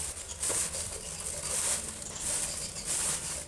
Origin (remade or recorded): remade